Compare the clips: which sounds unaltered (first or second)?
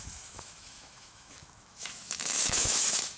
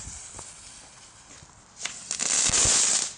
second